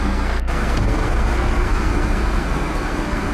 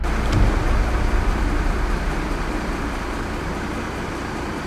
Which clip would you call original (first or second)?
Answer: second